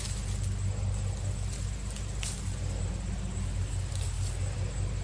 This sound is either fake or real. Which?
real